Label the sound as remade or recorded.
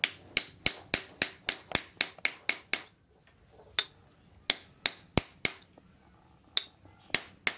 recorded